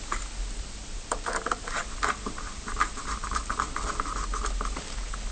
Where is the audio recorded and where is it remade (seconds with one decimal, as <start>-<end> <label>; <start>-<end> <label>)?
0.0-5.3 recorded